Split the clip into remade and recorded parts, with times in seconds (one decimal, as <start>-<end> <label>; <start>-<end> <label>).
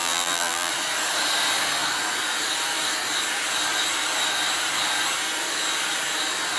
0.0-0.7 remade; 0.7-6.6 recorded